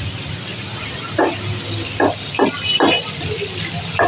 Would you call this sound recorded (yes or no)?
yes